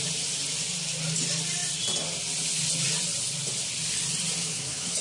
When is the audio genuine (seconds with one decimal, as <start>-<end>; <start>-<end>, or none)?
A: 0.0-4.4